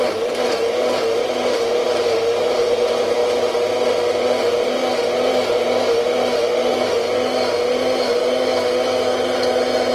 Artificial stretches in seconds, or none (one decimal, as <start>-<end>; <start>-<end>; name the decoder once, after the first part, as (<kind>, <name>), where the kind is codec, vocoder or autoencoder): 0.0-3.2 (vocoder, BigVGAN v2); 5.1-7.0